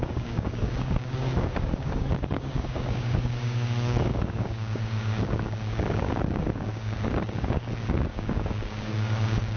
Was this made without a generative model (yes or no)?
no